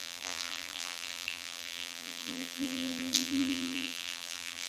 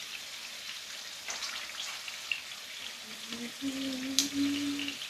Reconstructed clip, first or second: first